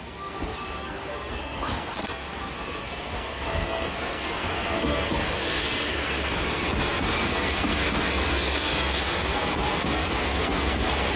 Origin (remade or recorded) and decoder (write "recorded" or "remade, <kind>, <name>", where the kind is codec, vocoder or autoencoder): remade, codec, SNAC